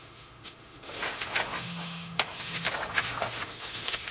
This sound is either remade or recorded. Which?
remade